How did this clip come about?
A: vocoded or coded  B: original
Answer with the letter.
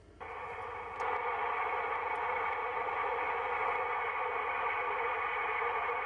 B